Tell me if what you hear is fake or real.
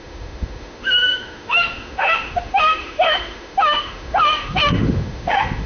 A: fake